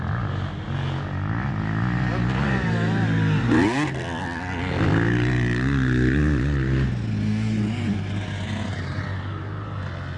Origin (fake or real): real